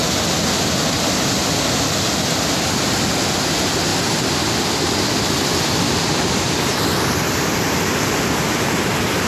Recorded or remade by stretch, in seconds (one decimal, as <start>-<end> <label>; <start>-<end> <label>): 0.0-3.9 recorded; 3.9-7.6 remade; 7.6-9.3 recorded